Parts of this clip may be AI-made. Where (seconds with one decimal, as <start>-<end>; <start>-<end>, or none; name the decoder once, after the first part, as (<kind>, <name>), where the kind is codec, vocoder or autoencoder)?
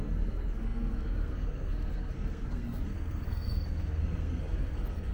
0.0-5.1 (codec, SNAC)